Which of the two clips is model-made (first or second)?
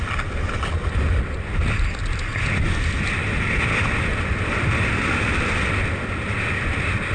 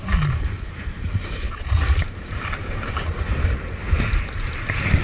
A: second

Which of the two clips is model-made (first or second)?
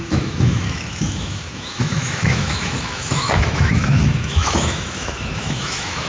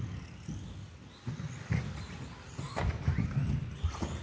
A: first